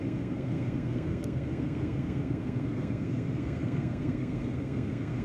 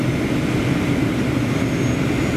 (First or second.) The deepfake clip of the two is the first